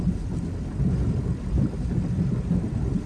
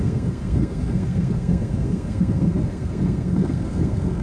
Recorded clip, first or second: first